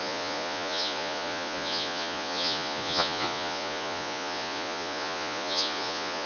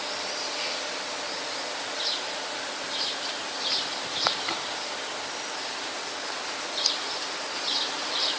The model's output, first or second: first